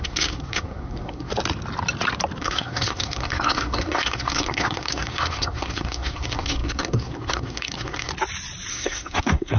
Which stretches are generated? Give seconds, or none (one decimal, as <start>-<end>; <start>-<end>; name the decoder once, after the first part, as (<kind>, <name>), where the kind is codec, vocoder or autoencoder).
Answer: 0.0-1.3 (codec, SNAC); 2.4-8.1; 8.7-9.6